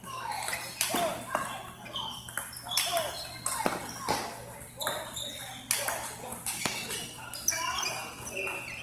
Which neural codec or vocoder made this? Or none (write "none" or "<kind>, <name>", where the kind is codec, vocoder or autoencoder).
none